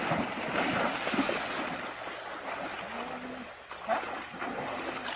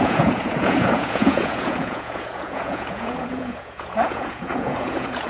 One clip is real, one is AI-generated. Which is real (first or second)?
first